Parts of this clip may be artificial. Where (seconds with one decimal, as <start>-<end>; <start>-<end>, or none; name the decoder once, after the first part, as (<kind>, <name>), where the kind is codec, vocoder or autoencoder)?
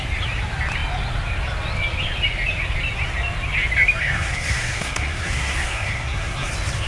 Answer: 4.0-6.5 (codec, SNAC)